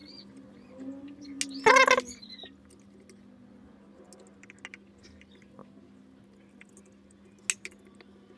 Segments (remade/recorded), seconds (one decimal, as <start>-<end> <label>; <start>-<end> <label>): 0.0-8.4 recorded